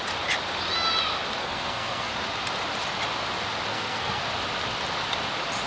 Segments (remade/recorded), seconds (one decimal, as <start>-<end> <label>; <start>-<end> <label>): 0.0-1.4 recorded; 1.4-2.1 remade; 2.1-3.7 recorded; 3.7-4.2 remade; 4.2-5.7 recorded